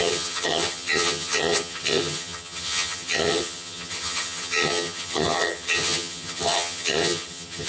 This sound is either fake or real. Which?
fake